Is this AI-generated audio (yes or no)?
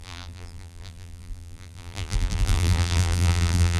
yes